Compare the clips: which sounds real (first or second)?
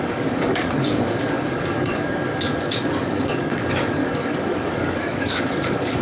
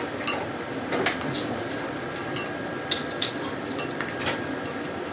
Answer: second